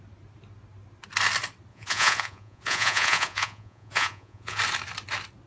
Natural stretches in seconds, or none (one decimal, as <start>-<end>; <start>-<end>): 0.0-1.7; 4.6-5.5